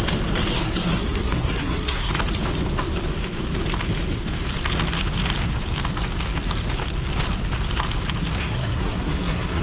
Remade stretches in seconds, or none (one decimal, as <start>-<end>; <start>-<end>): 0.5-2.1; 8.4-9.6